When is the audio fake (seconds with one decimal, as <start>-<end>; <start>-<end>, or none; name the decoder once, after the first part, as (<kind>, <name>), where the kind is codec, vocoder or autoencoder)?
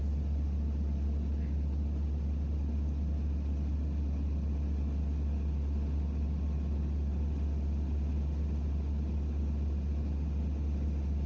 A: none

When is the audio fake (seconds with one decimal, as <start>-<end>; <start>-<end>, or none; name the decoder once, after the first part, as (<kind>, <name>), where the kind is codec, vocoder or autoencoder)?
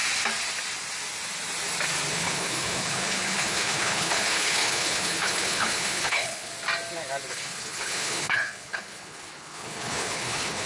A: 2.1-6.5 (codec, HILCodec); 7.3-10.7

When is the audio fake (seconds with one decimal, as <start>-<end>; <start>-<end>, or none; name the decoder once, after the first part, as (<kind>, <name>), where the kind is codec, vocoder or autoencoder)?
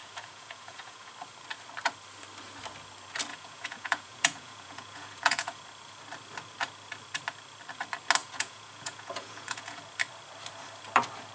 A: 0.0-1.1 (vocoder, Vocos); 3.3-5.6; 8.2-9.8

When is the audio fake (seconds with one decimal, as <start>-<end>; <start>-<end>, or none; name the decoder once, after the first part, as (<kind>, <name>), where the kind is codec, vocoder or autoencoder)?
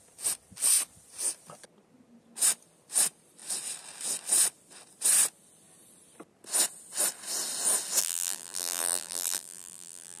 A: 8.0-10.2 (vocoder, BigVGAN v2)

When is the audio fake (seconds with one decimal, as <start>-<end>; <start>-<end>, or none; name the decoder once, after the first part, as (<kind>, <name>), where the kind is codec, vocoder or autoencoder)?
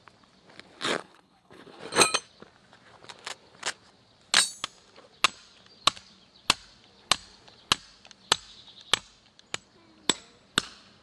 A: 1.0-1.8 (codec, HILCodec)